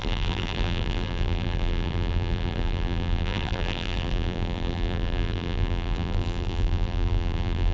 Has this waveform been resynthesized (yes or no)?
yes